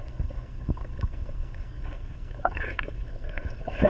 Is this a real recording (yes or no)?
no